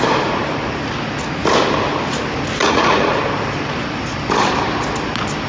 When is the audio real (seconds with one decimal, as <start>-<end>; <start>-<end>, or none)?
0.0-2.6; 3.2-5.5